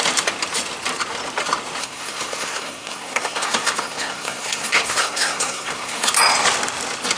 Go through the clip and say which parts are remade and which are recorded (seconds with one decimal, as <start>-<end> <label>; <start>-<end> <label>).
0.0-1.8 recorded; 1.8-6.1 remade; 6.1-7.2 recorded